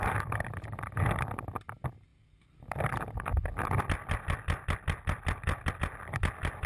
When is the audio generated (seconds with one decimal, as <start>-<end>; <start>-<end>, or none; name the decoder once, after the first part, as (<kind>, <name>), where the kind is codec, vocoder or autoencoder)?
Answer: none